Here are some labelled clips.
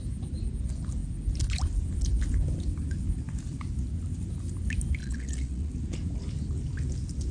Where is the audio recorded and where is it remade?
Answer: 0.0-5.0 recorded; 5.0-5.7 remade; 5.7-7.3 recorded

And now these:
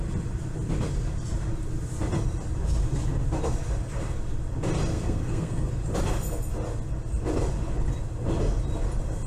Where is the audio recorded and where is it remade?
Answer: 0.0-4.9 recorded; 4.9-5.7 remade; 5.7-9.3 recorded